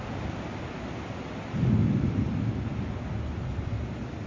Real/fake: real